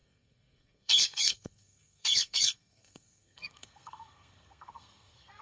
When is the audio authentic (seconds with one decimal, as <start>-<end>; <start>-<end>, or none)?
none